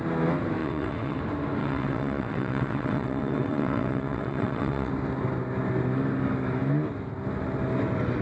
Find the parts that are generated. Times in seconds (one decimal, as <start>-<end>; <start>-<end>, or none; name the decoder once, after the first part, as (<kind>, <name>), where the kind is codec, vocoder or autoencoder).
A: 0.6-1.2 (vocoder, WaveNeXt); 1.6-4.9